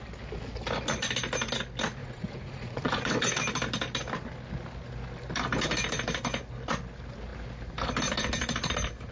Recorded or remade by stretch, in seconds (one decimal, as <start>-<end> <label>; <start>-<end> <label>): 0.0-2.0 recorded; 2.0-3.1 remade; 3.1-9.1 recorded